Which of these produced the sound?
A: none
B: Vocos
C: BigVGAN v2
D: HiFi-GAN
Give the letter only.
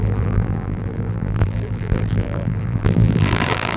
C